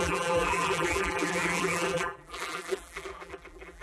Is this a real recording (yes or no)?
no